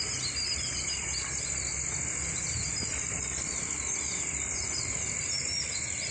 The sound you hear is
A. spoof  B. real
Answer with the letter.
B